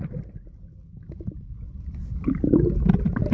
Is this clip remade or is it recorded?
recorded